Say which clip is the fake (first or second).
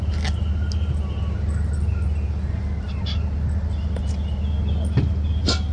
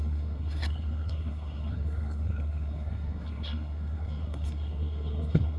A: second